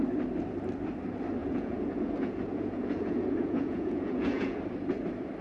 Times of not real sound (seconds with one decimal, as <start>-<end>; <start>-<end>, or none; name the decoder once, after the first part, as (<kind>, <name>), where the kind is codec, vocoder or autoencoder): 1.4-4.6 (vocoder, Vocos)